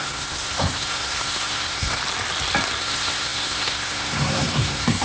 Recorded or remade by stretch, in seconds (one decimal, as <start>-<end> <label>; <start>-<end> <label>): 0.0-2.0 remade; 2.0-2.8 recorded; 2.8-5.0 remade